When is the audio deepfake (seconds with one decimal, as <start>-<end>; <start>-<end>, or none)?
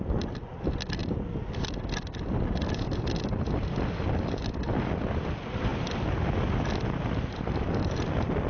none